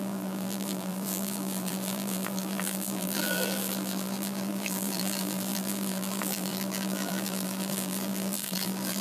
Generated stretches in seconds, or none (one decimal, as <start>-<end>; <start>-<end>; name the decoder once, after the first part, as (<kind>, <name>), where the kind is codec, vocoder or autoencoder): 0.0-9.0 (vocoder, BigVGAN v2)